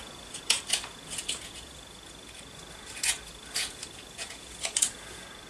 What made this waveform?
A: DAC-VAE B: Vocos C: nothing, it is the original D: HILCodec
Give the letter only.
B